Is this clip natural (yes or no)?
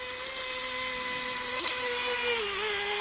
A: yes